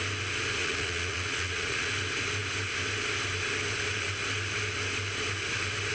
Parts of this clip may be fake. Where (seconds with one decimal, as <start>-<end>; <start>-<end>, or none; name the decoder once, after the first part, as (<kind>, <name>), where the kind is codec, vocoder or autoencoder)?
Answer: 0.6-1.9 (vocoder, Vocos)